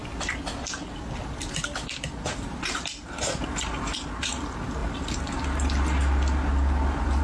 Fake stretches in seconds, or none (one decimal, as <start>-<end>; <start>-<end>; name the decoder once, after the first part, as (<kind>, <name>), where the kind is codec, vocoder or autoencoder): none